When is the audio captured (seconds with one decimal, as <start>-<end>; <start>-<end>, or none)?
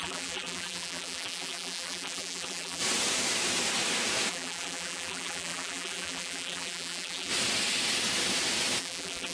2.8-4.3; 7.3-8.8